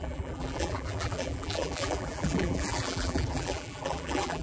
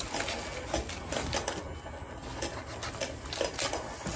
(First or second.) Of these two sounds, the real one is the second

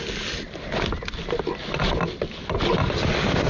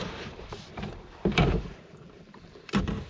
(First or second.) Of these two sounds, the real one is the first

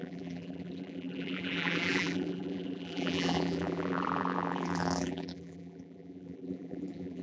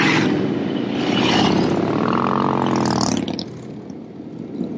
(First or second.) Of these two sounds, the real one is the second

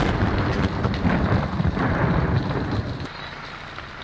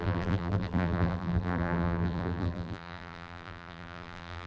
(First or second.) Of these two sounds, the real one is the first